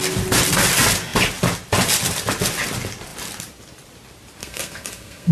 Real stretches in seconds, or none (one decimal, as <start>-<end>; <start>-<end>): 0.0-4.4